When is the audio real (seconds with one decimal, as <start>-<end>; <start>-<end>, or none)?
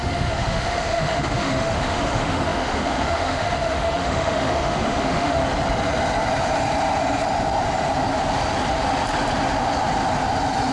5.4-10.7